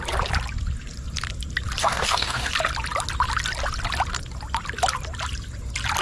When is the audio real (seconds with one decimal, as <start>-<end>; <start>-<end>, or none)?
0.0-1.8; 2.5-6.0